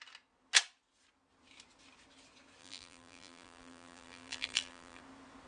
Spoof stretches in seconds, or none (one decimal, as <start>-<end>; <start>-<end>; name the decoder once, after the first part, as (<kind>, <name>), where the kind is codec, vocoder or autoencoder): 2.6-5.0 (vocoder, BigVGAN v2)